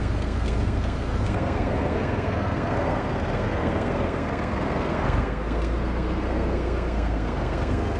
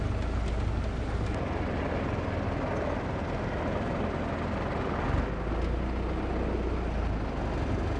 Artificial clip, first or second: first